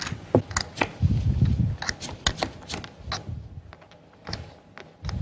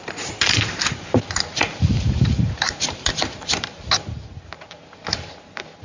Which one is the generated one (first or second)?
second